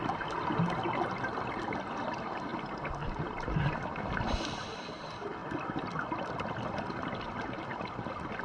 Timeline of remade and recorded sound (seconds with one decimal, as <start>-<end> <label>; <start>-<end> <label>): 0.0-8.4 recorded